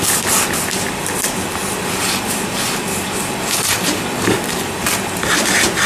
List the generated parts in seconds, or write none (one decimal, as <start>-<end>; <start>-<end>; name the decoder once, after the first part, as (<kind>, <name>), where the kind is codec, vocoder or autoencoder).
1.6-4.0 (vocoder, BigVGAN v2)